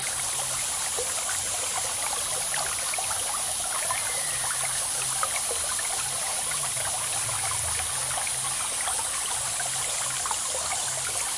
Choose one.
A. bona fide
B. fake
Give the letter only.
A